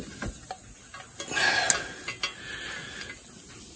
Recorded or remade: recorded